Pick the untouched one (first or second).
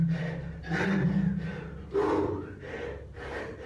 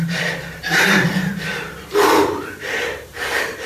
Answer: first